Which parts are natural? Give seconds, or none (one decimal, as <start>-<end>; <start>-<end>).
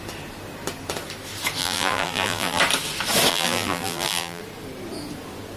0.0-1.6; 2.6-3.3; 4.4-5.6